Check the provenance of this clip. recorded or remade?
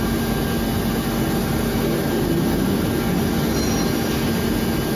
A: recorded